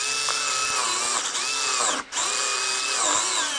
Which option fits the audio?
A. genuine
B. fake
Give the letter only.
A